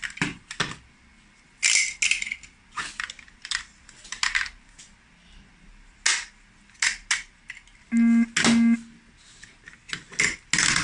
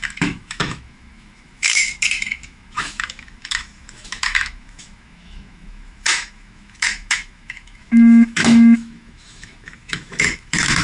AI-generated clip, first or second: second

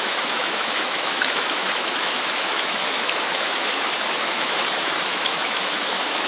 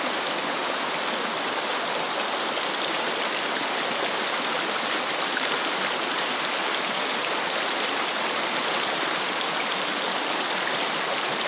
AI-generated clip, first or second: first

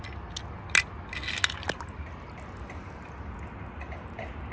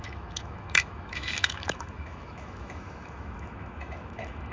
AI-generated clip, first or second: second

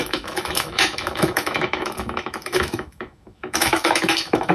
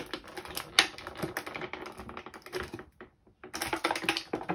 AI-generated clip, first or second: first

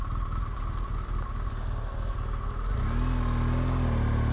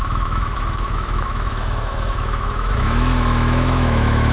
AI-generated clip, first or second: second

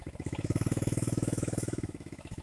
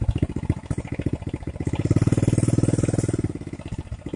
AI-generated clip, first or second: first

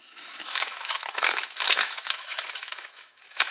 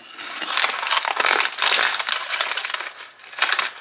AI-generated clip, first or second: first